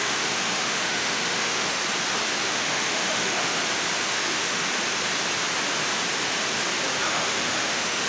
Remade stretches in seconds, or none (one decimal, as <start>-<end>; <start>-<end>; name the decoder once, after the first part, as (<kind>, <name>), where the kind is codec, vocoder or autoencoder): 0.0-1.8 (autoencoder, DAC-VAE); 2.4-3.6; 4.1-4.6; 7.0-8.1